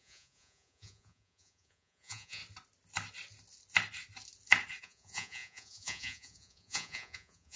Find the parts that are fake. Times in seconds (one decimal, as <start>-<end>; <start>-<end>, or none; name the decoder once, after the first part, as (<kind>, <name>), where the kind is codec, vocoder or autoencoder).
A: 0.0-2.4 (vocoder, Vocos); 4.8-7.6